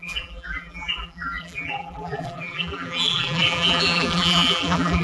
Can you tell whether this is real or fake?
fake